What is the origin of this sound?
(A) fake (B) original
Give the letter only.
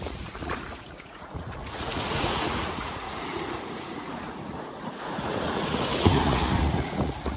A